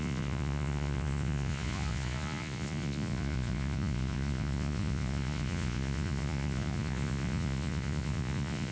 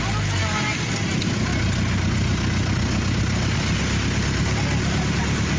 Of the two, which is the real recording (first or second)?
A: second